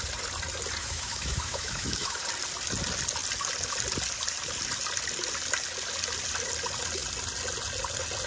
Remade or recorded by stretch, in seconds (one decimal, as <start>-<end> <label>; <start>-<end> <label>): 0.0-0.8 recorded; 0.8-2.2 remade; 2.2-8.3 recorded